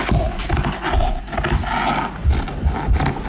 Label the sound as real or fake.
real